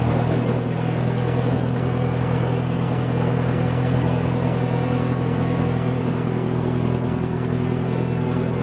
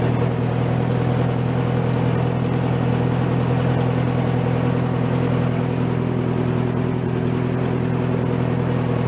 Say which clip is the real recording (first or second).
second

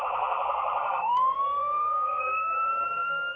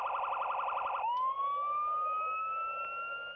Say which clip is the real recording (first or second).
second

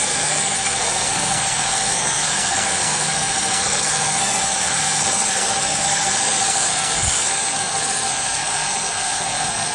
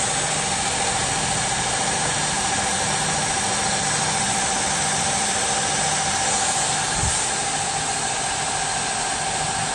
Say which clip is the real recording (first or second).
second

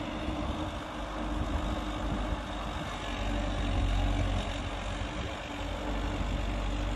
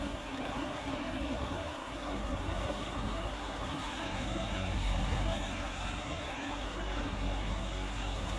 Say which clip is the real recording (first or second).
first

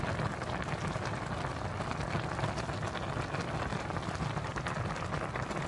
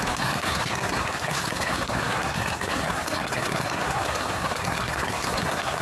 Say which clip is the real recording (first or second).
first